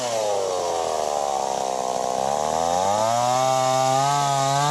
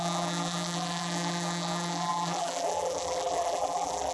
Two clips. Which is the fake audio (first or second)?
second